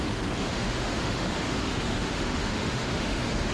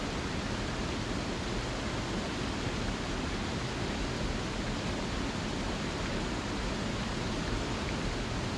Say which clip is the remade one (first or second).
first